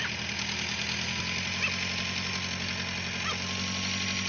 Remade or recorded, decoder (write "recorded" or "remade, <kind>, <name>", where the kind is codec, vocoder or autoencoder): recorded